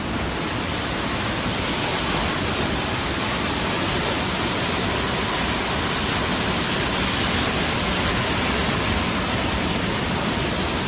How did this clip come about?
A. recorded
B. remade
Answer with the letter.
A